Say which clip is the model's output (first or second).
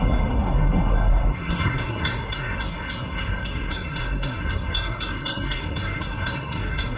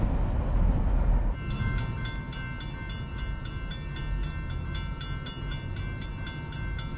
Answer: first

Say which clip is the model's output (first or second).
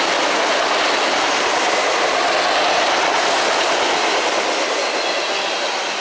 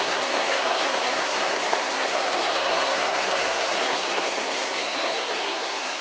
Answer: second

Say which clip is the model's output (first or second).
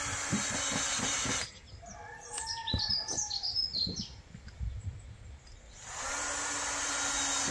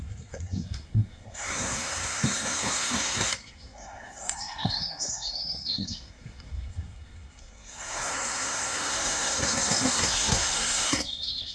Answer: second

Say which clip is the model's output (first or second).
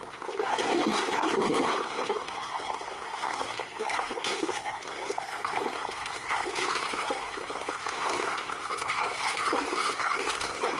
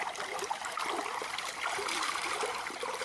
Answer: first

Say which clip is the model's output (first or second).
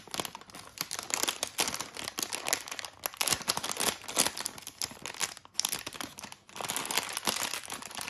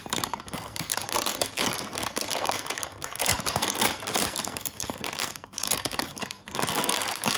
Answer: second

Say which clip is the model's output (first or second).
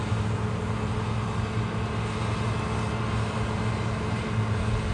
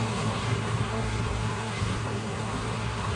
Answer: second